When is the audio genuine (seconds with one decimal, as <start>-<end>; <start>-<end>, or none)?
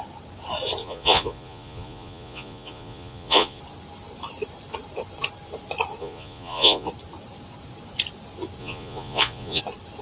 0.0-0.8; 3.6-6.0; 6.9-8.6; 9.6-10.0